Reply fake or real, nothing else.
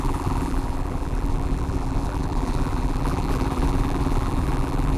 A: fake